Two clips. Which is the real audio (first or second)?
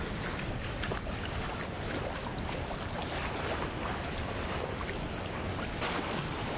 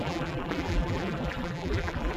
first